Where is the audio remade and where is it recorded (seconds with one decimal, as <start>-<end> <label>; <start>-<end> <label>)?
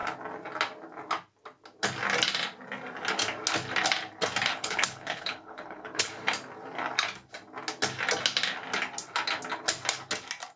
0.0-4.5 recorded; 4.5-6.1 remade; 6.1-10.6 recorded